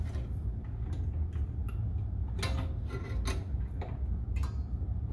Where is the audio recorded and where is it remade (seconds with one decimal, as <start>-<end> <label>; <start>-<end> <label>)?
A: 0.0-5.1 recorded